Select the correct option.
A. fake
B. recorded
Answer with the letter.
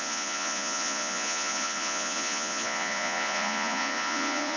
A